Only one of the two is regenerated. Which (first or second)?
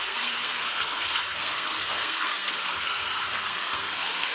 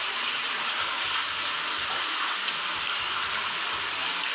first